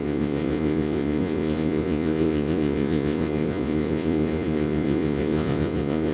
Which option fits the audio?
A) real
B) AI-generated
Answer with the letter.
B